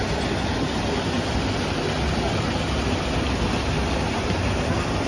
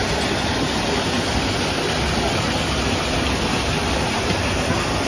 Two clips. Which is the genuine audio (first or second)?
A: first